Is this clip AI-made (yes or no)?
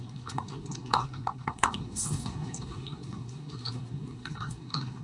yes